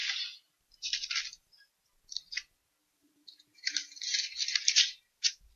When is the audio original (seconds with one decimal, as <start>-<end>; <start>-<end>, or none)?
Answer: 0.0-2.9